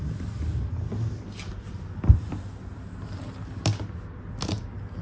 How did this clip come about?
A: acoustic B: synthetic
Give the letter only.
A